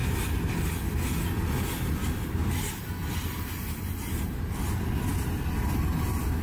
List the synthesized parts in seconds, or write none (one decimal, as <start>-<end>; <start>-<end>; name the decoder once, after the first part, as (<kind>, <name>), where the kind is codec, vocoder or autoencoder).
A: none